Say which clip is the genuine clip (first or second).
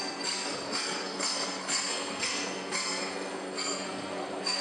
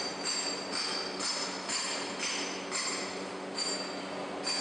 second